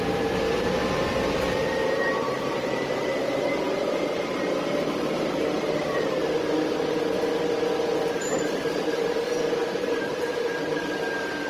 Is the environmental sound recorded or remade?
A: remade